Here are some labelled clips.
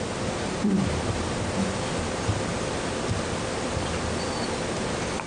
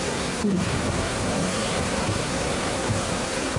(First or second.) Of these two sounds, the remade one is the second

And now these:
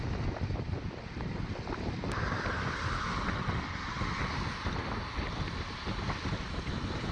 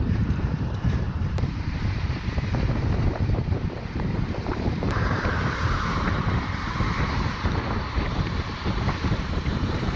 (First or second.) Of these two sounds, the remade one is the second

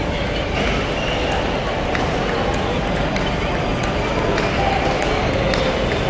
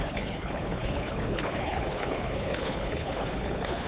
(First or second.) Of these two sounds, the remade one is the second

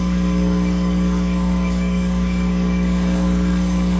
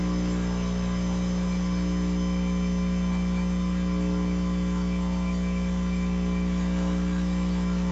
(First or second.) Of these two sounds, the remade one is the first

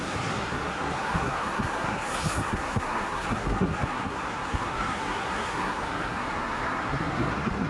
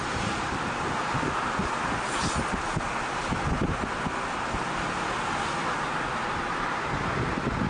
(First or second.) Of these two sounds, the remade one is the first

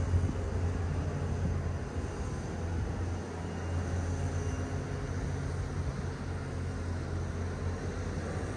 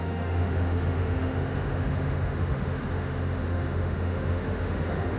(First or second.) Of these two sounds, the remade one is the second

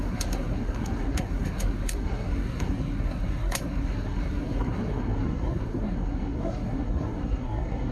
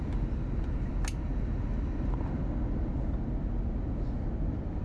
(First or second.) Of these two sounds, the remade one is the first